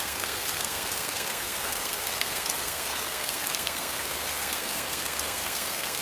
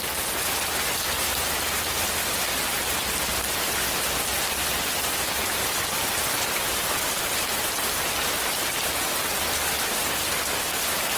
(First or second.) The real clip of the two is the second